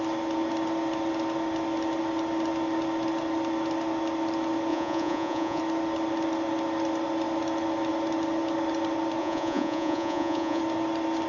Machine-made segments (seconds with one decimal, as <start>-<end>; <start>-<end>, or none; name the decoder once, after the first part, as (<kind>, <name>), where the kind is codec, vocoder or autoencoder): 4.7-5.6 (vocoder, Vocos); 9.2-10.6